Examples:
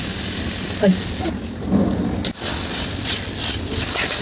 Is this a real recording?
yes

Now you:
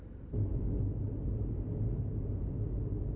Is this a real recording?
yes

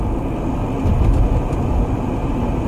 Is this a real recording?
yes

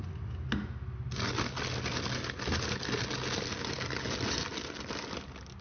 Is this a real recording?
yes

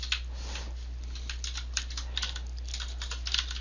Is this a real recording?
yes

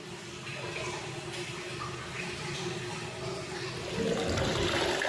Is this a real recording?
yes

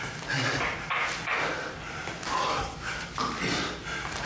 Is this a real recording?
yes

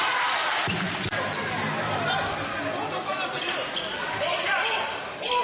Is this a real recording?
yes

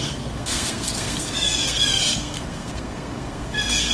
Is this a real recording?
no